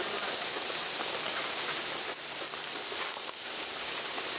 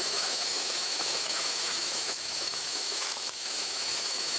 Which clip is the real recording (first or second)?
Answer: first